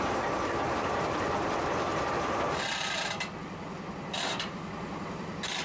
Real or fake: fake